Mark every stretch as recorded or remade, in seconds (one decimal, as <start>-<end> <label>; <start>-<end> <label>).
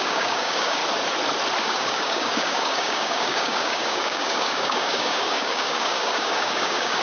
0.0-0.8 remade; 0.8-1.6 recorded; 1.6-7.0 remade